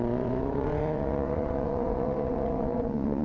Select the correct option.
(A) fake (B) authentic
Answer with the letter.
A